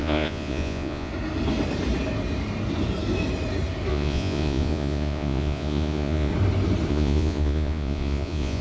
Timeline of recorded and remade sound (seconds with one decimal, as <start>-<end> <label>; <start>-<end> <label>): 0.0-1.1 remade; 1.1-3.9 recorded; 3.9-6.3 remade; 6.3-6.9 recorded; 6.9-8.6 remade

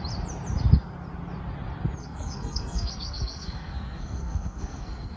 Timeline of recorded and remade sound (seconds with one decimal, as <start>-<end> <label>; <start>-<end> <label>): 0.0-2.0 recorded; 2.0-5.2 remade

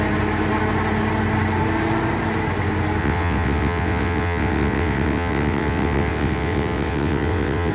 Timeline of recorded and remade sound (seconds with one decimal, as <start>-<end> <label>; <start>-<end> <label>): 0.0-3.0 recorded; 3.0-7.7 remade

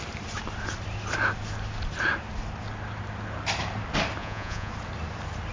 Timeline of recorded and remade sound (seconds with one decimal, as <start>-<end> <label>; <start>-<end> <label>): 0.0-4.2 recorded; 4.2-4.7 remade; 4.7-5.5 recorded

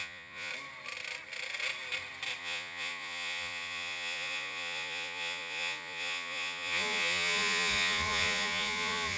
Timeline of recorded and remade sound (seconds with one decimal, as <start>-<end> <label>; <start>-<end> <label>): 0.0-0.5 remade; 0.5-2.4 recorded; 2.4-9.2 remade

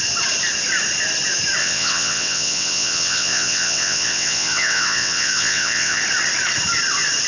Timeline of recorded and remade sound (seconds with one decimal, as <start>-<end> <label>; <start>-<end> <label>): 0.0-1.6 recorded; 1.6-6.0 remade; 6.0-7.3 recorded

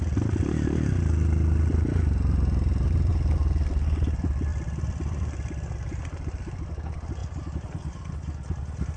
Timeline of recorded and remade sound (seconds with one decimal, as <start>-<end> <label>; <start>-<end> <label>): 0.0-4.5 recorded; 4.5-5.8 remade; 5.8-7.2 recorded; 7.2-8.1 remade; 8.1-9.0 recorded

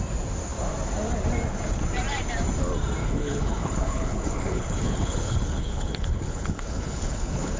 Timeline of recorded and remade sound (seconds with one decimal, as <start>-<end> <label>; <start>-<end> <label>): 0.0-3.0 recorded; 3.0-7.6 remade